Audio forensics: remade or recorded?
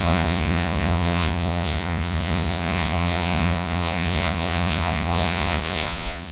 remade